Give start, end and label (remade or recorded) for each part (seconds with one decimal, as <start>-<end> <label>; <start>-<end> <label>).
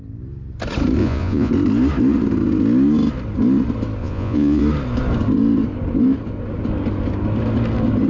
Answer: 0.0-1.0 recorded; 1.0-1.5 remade; 1.5-4.0 recorded; 4.0-4.6 remade; 4.6-8.1 recorded